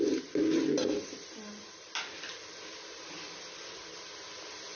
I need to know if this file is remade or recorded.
recorded